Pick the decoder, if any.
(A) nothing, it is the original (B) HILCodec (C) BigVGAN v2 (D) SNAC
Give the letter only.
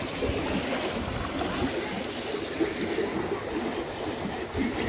A